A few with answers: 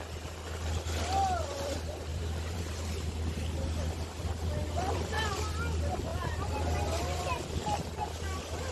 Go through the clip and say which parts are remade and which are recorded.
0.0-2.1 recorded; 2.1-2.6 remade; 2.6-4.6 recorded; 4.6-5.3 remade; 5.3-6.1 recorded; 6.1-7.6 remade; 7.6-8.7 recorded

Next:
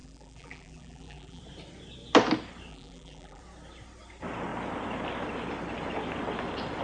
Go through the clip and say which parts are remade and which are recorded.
0.0-1.4 remade; 1.4-2.7 recorded; 2.7-3.4 remade; 3.4-6.8 recorded

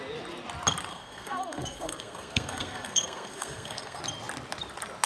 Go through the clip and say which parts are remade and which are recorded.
0.0-0.9 recorded; 0.9-4.0 remade; 4.0-5.1 recorded

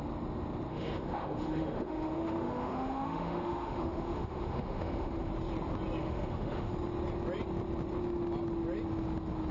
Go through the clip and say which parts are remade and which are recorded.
0.0-0.7 recorded; 0.7-5.3 remade; 5.3-6.0 recorded; 6.0-6.7 remade; 6.7-9.5 recorded